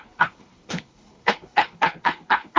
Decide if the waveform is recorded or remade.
remade